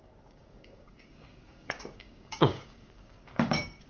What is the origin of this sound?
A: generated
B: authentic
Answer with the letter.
A